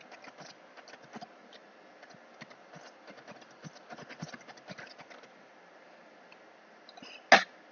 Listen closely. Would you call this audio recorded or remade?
recorded